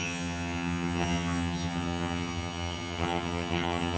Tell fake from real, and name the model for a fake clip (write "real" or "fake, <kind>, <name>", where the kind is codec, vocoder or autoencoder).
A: fake, vocoder, HiFi-GAN